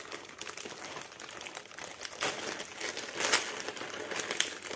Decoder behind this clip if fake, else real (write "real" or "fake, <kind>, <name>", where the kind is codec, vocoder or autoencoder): real